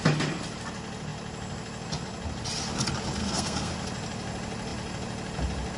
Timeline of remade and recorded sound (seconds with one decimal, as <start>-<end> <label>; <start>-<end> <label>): 0.0-3.2 recorded; 3.2-3.7 remade; 3.7-5.8 recorded